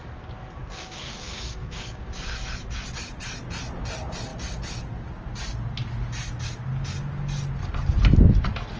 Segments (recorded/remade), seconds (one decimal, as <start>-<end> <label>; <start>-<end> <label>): 0.0-0.6 recorded; 0.6-2.1 remade; 2.1-8.8 recorded